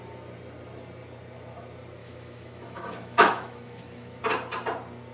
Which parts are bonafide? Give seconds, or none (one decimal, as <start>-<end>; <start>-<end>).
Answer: 0.0-2.0; 4.2-5.1